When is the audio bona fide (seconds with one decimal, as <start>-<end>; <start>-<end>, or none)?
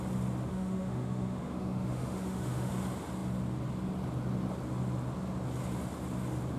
0.0-0.5; 2.7-6.6